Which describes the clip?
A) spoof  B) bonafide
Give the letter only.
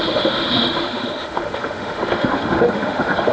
A